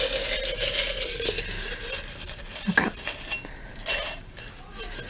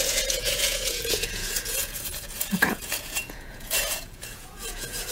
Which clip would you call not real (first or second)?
second